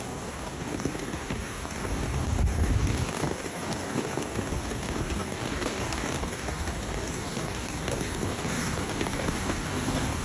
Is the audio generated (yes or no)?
yes